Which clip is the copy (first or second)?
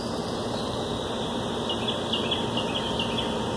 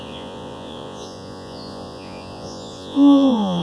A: second